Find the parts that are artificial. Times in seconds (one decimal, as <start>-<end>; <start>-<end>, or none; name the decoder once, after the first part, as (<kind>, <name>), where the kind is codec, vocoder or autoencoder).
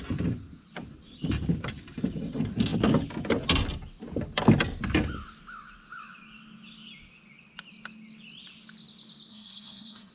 9.3-10.1 (codec, SNAC)